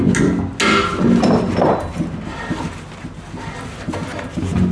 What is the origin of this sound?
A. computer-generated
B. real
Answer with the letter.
B